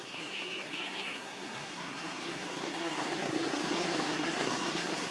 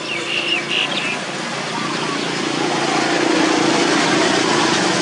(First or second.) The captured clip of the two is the second